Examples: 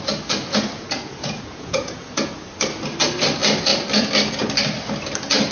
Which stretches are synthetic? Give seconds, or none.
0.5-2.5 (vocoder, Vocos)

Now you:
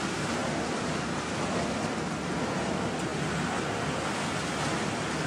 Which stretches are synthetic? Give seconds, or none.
none

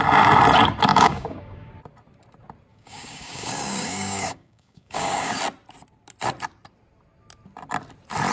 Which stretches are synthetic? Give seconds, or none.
0.9-1.7 (codec, DAC); 2.7-5.4

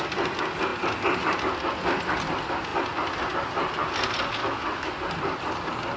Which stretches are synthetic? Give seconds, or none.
4.4-4.9 (autoencoder, DAC-VAE)

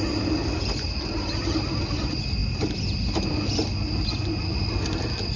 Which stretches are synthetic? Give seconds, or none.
none

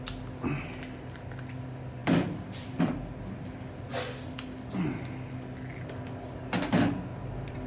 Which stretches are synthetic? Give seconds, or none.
2.0-2.8 (vocoder, BigVGAN v2); 7.1-7.7